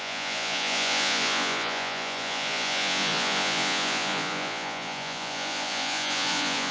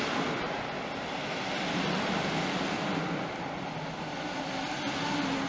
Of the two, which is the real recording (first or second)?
second